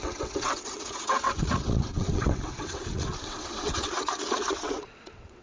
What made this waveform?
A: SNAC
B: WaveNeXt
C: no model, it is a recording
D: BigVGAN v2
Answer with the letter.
B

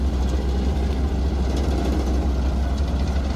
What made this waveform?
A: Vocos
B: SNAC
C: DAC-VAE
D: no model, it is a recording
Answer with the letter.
D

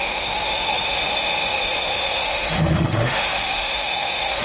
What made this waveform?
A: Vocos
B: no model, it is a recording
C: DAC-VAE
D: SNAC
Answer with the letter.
C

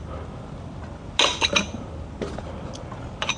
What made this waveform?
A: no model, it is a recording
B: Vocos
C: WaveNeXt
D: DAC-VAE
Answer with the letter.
A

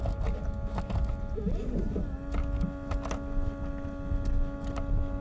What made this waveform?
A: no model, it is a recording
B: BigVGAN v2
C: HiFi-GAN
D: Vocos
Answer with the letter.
A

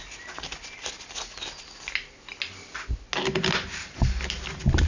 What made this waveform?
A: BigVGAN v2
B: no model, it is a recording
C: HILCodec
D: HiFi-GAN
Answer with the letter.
B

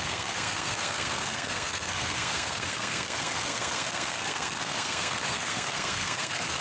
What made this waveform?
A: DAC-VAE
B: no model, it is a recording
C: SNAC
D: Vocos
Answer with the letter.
C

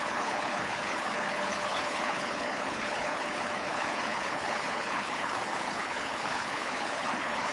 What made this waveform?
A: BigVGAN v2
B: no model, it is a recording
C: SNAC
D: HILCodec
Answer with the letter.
D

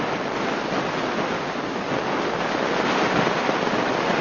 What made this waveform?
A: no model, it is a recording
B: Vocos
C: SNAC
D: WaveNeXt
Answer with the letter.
A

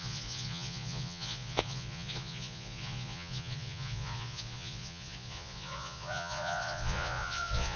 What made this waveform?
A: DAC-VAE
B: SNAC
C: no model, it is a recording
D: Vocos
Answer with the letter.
D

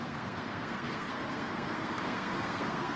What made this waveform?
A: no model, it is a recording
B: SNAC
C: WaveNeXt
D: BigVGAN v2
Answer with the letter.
B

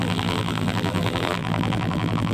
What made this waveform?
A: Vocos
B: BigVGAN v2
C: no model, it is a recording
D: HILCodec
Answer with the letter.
B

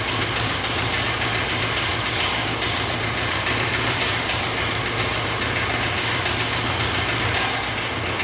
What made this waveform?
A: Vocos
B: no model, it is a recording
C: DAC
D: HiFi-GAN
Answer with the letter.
B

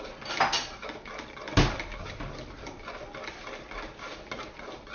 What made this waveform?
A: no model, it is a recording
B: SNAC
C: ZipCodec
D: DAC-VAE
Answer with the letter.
A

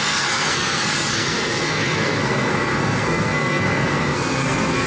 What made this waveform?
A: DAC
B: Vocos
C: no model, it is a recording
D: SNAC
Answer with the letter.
D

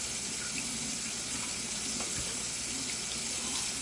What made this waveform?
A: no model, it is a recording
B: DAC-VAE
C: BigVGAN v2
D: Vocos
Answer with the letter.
A